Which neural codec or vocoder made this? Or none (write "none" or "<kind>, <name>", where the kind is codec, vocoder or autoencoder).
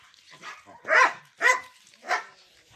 none